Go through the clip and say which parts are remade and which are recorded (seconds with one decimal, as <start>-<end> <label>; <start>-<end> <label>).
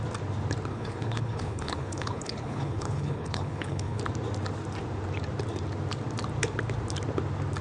0.0-0.7 recorded; 0.7-4.0 remade; 4.0-7.6 recorded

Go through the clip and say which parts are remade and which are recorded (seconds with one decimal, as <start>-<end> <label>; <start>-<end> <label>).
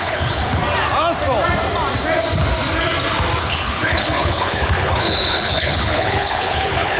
0.0-0.6 remade; 0.6-3.4 recorded; 3.4-7.0 remade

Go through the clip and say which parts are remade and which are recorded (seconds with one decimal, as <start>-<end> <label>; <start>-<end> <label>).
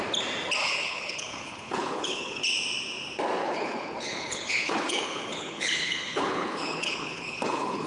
0.0-0.6 recorded; 0.6-2.4 remade; 2.4-3.4 recorded; 3.4-7.9 remade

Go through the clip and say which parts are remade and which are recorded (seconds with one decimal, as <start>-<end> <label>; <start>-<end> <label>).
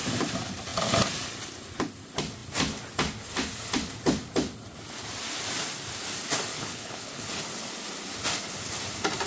0.0-6.5 recorded; 6.5-7.4 remade; 7.4-9.3 recorded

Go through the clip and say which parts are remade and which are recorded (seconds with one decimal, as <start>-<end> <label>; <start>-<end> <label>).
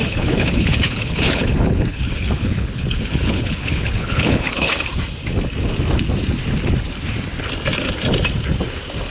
0.0-4.7 remade; 4.7-9.1 recorded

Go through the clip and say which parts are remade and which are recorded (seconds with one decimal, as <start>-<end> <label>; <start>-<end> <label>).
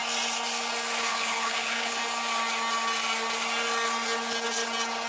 0.0-1.0 recorded; 1.0-2.0 remade; 2.0-5.1 recorded